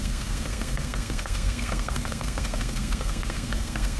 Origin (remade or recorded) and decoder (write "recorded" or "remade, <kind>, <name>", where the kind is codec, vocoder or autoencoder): remade, codec, SNAC